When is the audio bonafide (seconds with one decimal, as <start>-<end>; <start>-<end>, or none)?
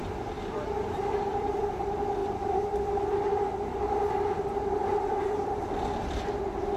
1.0-2.2; 6.3-6.8